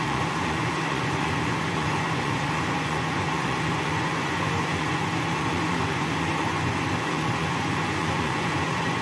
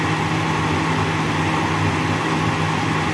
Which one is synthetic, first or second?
first